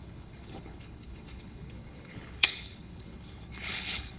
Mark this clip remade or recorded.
remade